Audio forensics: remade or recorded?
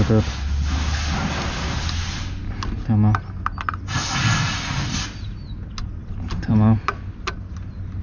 recorded